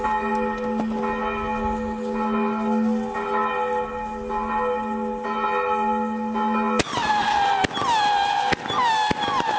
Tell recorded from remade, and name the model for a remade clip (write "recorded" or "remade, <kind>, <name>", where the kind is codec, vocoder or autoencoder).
recorded